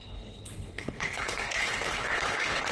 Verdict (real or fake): fake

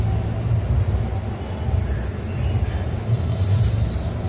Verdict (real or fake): real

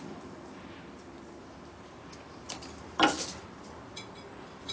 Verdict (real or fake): real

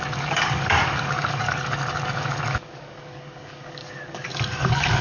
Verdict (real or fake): fake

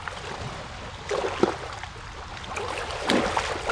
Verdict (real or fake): real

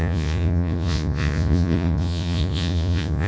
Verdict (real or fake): fake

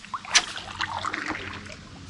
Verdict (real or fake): real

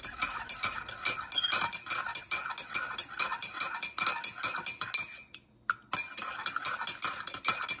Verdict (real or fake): real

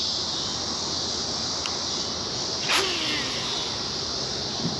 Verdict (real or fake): real